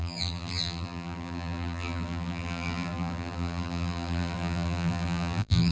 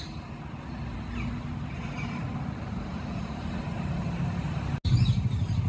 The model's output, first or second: first